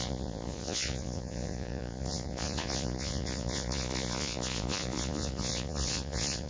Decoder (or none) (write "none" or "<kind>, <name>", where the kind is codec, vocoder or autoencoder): vocoder, Vocos